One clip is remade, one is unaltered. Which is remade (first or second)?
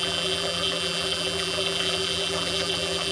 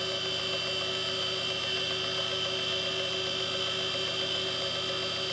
first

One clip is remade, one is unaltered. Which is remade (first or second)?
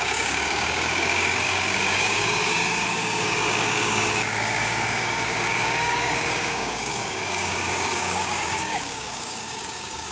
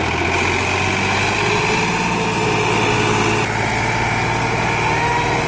first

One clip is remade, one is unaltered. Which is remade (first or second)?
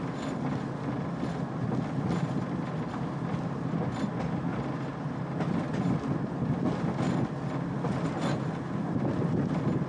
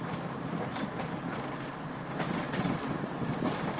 second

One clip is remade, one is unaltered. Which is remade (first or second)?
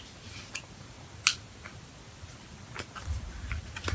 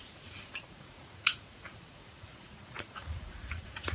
second